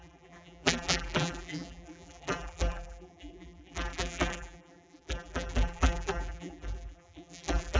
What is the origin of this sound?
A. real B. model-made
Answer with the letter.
B